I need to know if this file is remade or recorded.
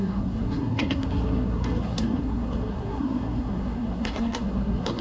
remade